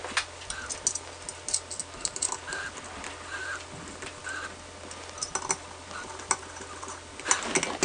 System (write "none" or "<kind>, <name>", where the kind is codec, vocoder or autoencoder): none